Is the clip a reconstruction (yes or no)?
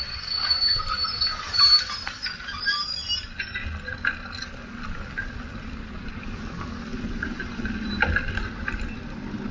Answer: no